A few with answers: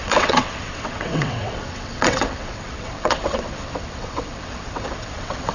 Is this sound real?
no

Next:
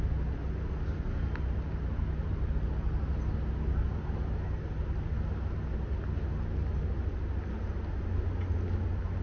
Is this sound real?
yes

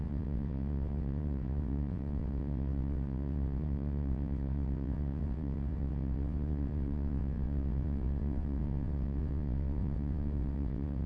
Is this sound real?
no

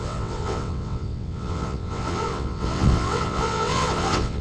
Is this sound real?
no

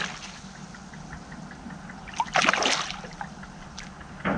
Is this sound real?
yes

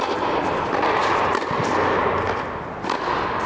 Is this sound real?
yes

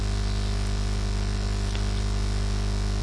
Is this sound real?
yes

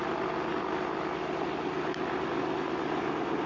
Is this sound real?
yes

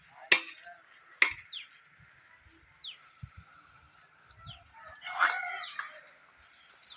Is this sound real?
yes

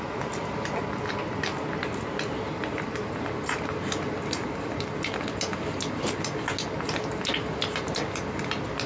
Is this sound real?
yes